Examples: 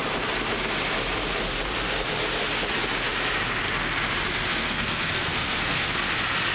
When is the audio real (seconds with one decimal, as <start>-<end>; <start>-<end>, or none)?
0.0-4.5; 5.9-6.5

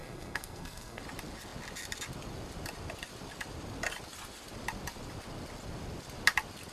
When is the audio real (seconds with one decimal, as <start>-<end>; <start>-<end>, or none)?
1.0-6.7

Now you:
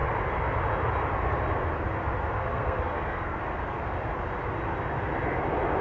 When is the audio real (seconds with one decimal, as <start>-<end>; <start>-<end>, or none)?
0.0-2.4; 3.4-5.8